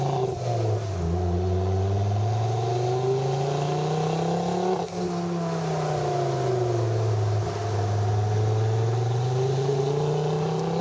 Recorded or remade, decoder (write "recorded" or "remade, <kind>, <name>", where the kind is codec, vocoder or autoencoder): recorded